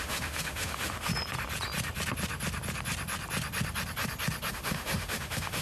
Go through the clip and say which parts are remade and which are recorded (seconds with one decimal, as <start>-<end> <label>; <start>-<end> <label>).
0.0-1.1 remade; 1.1-4.5 recorded; 4.5-5.6 remade